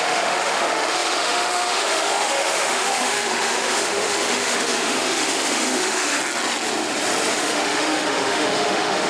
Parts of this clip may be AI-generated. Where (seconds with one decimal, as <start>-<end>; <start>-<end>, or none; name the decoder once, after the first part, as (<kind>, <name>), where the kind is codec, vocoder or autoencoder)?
0.0-6.2 (autoencoder, DAC-VAE); 7.3-9.1